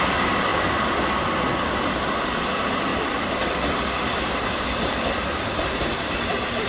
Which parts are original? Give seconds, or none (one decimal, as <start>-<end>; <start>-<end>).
0.0-2.9; 4.3-6.7